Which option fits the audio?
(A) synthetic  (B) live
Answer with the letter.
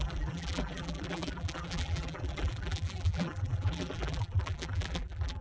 A